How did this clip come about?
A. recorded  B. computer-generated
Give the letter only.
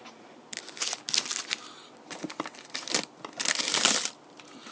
A